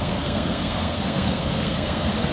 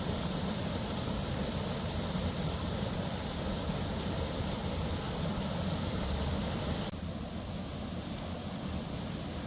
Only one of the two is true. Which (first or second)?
second